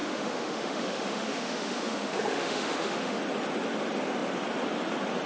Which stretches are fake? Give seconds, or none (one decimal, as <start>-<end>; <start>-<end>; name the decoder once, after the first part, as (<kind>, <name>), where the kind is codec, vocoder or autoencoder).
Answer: 0.0-3.2 (autoencoder, DAC-VAE)